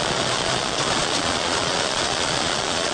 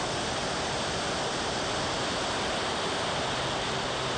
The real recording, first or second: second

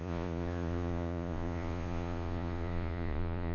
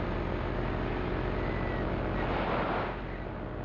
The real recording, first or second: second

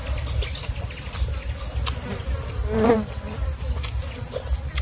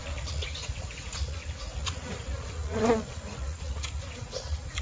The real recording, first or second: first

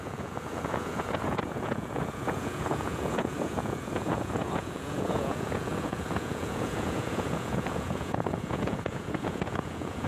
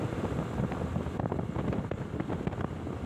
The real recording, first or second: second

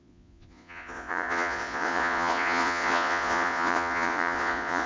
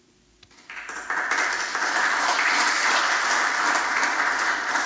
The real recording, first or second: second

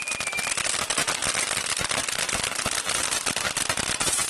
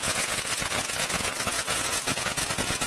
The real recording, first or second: first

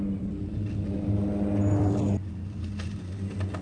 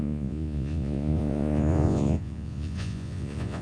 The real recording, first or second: first